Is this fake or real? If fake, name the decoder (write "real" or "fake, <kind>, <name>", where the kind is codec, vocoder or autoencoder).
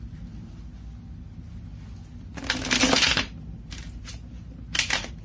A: real